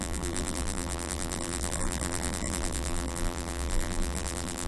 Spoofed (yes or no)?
yes